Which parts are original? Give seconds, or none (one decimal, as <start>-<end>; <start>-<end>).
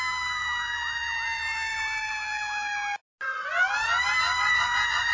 0.0-5.1